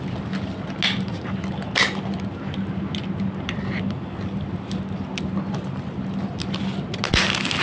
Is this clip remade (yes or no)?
no